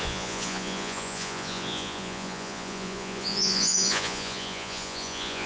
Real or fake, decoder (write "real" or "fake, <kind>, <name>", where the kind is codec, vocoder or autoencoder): fake, vocoder, Vocos